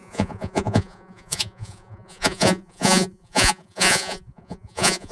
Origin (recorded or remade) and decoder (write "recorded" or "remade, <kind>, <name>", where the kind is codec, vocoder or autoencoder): remade, vocoder, Vocos